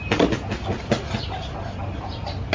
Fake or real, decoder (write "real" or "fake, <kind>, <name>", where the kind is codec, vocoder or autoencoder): real